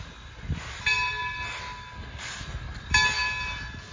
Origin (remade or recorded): recorded